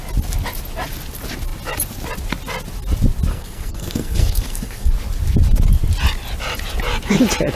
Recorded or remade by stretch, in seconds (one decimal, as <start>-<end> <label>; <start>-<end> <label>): 0.0-3.3 recorded; 3.3-4.9 remade; 4.9-7.6 recorded